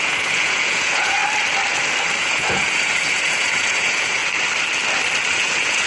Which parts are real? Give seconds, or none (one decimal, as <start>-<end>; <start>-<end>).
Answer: 1.2-2.2; 4.2-5.3

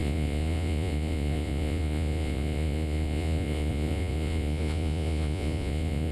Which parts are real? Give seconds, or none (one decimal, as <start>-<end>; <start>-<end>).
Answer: none

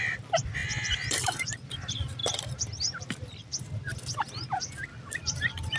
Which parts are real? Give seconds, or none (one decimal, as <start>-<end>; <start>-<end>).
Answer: 3.4-4.3

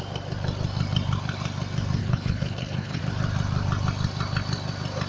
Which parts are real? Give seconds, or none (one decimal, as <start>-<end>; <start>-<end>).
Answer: 0.0-2.0; 3.0-5.1